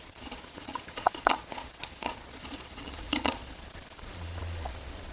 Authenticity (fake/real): fake